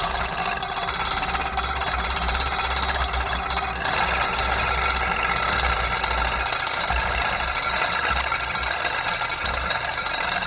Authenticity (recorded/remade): recorded